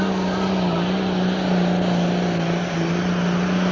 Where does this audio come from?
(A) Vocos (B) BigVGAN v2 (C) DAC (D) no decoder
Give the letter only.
D